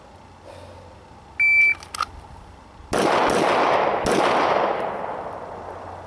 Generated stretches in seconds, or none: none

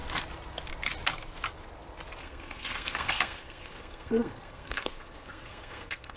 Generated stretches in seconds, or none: 2.2-6.2 (codec, SNAC)

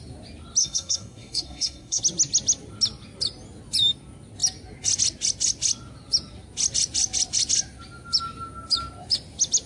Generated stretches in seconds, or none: 0.6-2.0 (codec, SNAC)